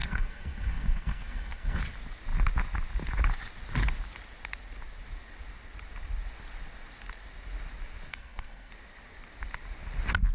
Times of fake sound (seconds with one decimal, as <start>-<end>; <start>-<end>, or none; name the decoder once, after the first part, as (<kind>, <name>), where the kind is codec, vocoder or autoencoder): 0.0-1.8 (codec, SNAC); 8.1-8.7

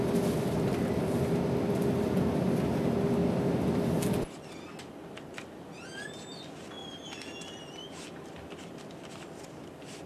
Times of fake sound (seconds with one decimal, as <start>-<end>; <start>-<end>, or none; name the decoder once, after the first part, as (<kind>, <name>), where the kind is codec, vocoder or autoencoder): none

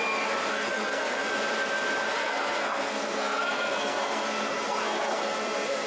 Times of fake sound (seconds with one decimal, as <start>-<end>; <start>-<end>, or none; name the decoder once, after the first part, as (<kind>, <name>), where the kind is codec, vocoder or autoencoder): 0.5-1.3 (codec, SNAC); 2.2-5.9

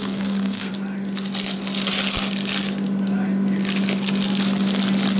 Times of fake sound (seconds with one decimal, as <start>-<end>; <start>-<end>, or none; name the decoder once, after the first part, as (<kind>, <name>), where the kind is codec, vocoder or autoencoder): 0.0-0.7 (codec, SNAC)

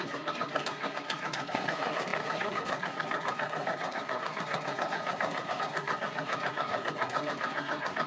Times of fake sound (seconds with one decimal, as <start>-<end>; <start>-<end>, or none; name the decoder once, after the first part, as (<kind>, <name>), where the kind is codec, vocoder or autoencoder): 0.0-8.1 (codec, SNAC)